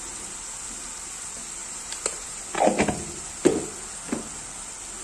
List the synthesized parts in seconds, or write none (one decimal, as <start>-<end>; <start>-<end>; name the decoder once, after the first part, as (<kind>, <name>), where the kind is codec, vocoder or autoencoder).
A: 1.6-2.4 (vocoder, BigVGAN v2)